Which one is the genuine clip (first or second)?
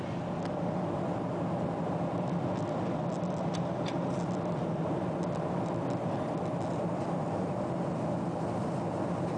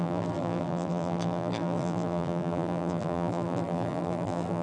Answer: first